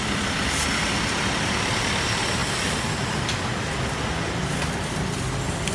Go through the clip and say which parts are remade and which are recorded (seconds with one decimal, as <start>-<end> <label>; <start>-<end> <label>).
0.0-2.4 remade; 2.4-5.7 recorded